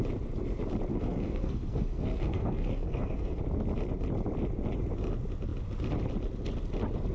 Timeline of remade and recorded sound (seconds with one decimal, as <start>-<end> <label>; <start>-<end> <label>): 0.0-0.9 recorded; 0.9-3.4 remade; 3.4-7.1 recorded